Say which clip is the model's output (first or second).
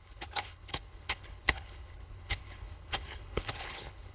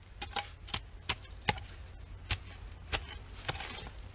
first